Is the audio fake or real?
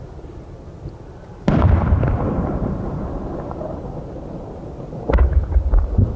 real